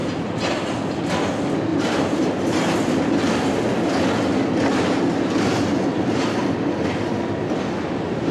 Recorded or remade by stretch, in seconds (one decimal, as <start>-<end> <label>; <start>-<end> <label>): 0.0-1.7 recorded; 1.7-3.1 remade; 3.1-8.3 recorded